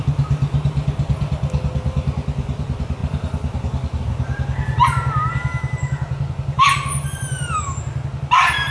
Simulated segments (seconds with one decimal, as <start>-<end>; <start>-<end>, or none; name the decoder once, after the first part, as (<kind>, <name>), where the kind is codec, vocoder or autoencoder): none